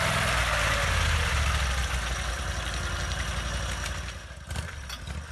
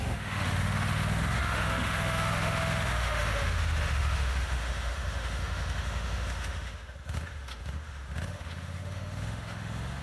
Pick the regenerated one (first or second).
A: second